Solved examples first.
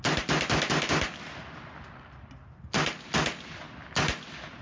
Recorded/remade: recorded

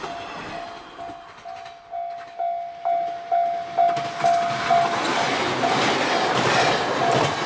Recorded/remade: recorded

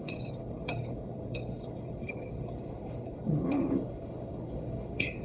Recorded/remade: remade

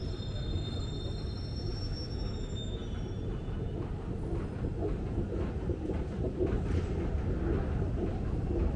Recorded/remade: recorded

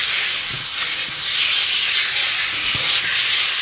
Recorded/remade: recorded